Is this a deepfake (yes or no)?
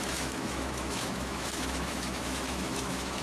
yes